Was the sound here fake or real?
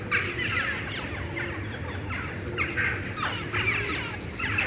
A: real